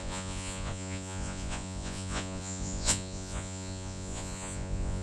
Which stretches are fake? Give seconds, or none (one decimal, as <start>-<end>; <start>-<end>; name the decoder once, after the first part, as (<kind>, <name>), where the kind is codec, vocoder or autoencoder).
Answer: 0.0-5.0 (vocoder, Vocos)